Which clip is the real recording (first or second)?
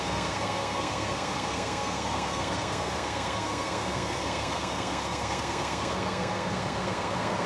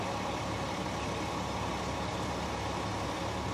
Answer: second